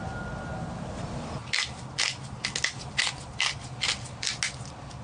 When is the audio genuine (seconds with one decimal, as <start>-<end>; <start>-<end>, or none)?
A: 0.0-5.0